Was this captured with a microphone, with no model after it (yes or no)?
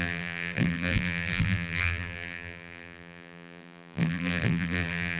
no